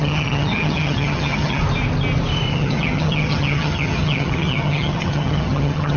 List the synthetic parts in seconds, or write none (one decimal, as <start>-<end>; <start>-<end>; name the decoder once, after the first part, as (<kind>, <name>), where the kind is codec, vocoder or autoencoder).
0.0-1.6 (vocoder, HiFi-GAN); 2.5-6.0